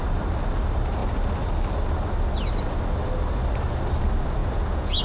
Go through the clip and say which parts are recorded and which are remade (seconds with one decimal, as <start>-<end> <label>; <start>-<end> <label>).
0.0-4.4 recorded; 4.4-5.0 remade